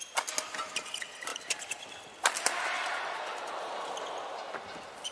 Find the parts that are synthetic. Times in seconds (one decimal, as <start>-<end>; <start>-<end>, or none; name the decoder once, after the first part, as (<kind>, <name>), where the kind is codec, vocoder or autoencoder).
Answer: none